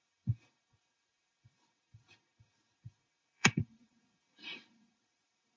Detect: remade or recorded remade